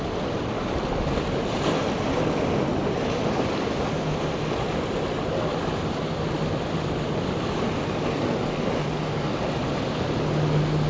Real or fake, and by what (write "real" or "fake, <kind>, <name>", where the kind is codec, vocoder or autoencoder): real